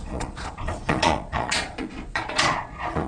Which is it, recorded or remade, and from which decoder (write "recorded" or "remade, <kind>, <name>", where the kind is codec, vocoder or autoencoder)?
remade, vocoder, Vocos